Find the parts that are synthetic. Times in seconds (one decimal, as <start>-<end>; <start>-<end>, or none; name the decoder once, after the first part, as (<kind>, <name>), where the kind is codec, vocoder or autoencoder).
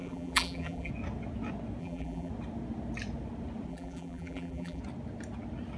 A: 0.0-0.9 (vocoder, BigVGAN v2); 1.8-2.3; 3.7-4.8